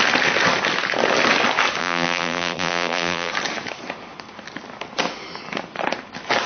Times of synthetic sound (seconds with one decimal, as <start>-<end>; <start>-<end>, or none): 1.8-3.3